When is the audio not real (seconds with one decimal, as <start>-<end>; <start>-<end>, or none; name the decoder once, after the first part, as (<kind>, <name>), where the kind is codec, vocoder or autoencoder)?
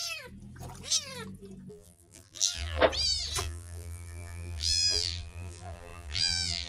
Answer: 1.7-2.8 (vocoder, BigVGAN v2); 3.4-6.7